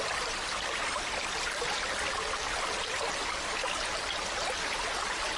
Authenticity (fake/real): real